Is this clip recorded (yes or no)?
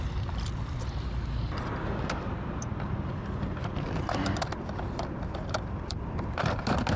no